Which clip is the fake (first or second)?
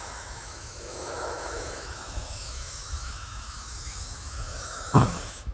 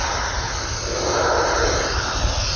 first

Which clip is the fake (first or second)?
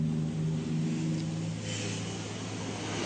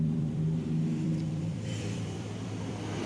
second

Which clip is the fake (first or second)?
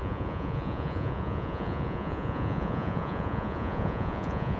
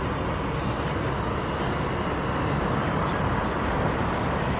first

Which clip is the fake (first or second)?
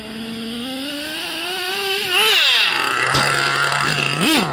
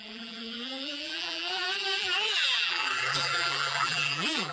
second